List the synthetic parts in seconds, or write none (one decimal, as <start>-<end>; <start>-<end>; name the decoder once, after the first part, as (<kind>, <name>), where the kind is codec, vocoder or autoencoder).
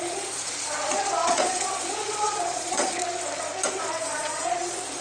0.0-3.0 (vocoder, Vocos); 3.8-5.0